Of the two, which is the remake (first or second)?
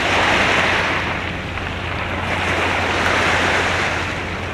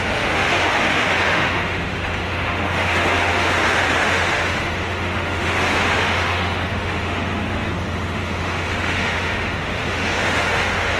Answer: second